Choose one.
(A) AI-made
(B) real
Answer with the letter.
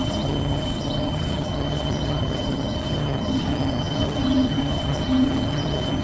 A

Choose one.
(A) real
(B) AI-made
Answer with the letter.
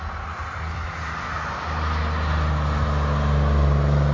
A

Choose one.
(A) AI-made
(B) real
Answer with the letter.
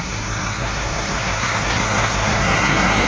A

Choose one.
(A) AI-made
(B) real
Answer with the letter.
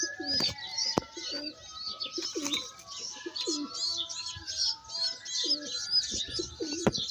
B